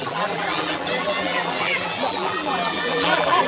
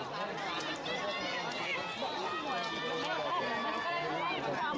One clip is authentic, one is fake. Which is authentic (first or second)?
second